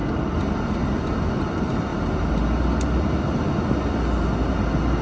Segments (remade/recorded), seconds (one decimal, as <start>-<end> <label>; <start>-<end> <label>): 0.0-5.0 recorded